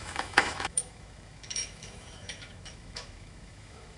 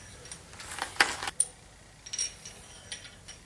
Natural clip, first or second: second